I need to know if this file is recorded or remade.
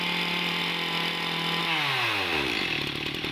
recorded